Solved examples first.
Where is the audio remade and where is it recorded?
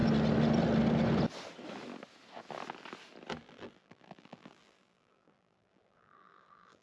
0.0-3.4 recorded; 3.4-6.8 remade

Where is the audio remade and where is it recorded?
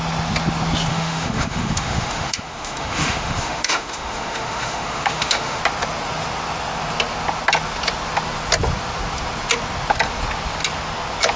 0.0-0.9 recorded; 0.9-5.6 remade; 5.6-11.4 recorded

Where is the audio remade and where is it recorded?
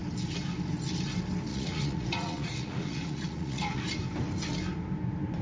0.0-1.5 recorded; 1.5-3.8 remade; 3.8-5.4 recorded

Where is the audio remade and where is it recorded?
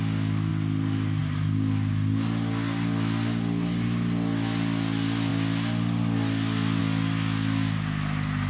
0.0-8.5 recorded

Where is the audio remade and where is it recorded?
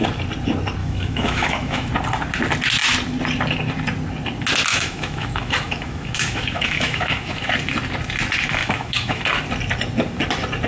0.0-0.8 recorded; 0.8-1.9 remade; 1.9-4.7 recorded; 4.7-7.5 remade; 7.5-8.6 recorded; 8.6-9.2 remade; 9.2-10.7 recorded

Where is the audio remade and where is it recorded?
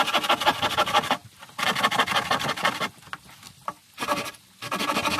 0.0-5.2 recorded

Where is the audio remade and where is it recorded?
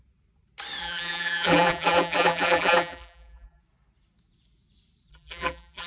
0.0-0.8 recorded; 0.8-3.6 remade; 3.6-5.1 recorded; 5.1-5.9 remade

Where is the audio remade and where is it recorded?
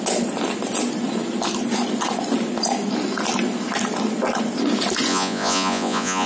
0.0-5.1 recorded; 5.1-6.3 remade